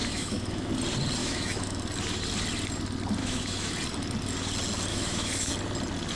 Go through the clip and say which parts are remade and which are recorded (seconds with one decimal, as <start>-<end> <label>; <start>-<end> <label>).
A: 0.0-0.7 remade; 0.7-1.2 recorded; 1.2-1.8 remade; 1.8-3.2 recorded; 3.2-3.7 remade; 3.7-4.9 recorded; 4.9-5.5 remade; 5.5-6.2 recorded